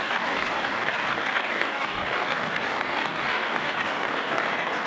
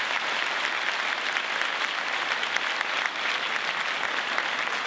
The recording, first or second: second